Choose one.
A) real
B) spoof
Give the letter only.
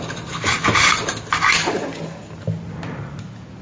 A